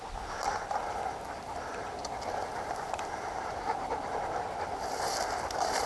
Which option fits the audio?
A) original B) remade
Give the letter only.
A